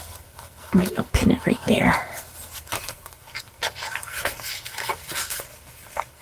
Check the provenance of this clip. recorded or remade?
remade